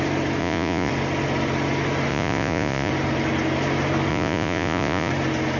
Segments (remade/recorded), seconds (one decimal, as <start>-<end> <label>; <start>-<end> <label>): 0.0-0.4 recorded; 0.4-0.9 remade; 0.9-2.1 recorded; 2.1-2.9 remade; 2.9-4.1 recorded; 4.1-5.1 remade; 5.1-5.6 recorded